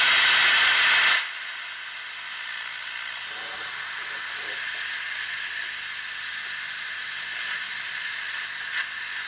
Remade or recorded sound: recorded